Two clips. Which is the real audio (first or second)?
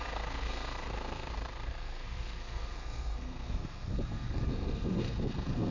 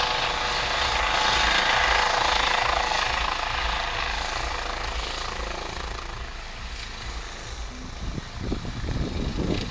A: second